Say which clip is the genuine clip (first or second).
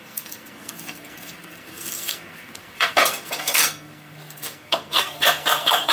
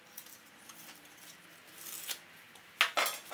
second